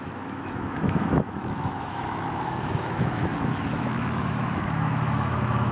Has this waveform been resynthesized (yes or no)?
yes